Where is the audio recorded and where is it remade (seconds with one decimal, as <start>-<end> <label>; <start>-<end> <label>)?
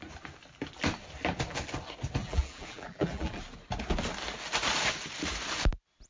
0.0-2.2 recorded; 2.2-3.4 remade; 3.4-6.1 recorded